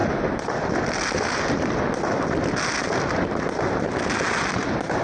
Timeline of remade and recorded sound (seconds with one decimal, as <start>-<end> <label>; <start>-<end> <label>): 0.0-5.0 recorded